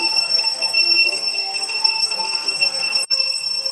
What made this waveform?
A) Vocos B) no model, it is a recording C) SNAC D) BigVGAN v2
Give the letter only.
C